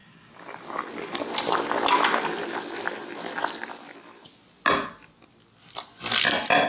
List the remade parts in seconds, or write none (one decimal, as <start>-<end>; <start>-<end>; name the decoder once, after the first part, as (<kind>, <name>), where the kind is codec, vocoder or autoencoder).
0.0-1.3 (codec, DAC)